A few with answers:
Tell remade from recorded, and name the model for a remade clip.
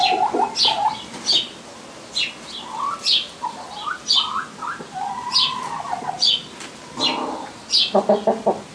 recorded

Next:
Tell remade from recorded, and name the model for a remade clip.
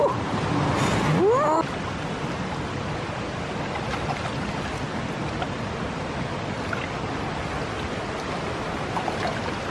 recorded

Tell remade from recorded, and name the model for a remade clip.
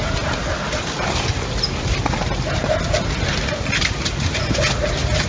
recorded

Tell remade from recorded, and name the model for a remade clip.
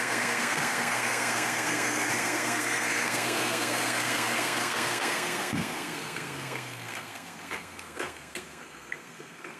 remade, codec, SNAC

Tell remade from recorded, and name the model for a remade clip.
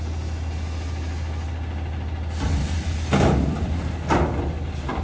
recorded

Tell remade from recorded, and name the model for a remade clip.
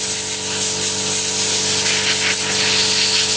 recorded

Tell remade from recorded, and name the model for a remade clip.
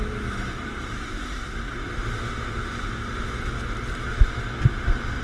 recorded